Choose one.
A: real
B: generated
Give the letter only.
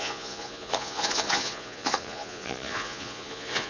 B